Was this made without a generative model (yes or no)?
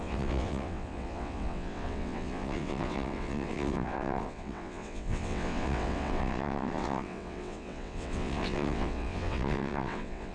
no